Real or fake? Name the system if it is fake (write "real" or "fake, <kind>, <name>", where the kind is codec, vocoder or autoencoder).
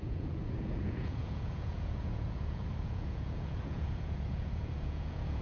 fake, vocoder, Vocos